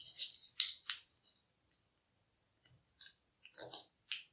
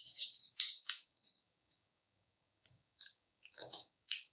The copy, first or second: second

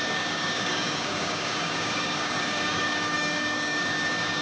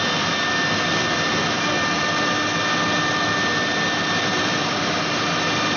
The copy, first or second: first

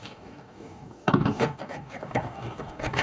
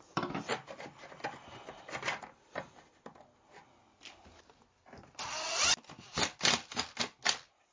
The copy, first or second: first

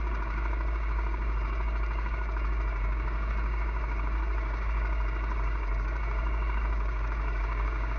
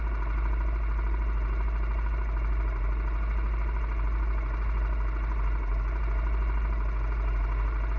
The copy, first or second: first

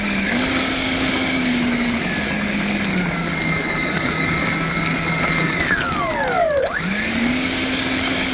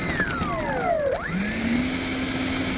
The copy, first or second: first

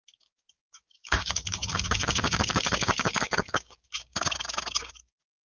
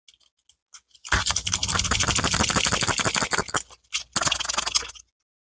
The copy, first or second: first